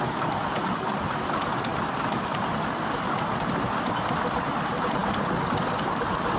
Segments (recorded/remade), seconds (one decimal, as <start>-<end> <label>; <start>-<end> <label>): 0.0-6.4 recorded